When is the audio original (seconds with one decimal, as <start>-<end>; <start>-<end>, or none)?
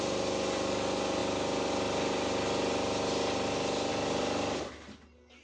0.0-5.4